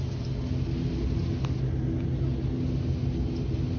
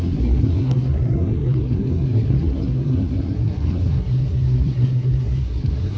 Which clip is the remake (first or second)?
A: second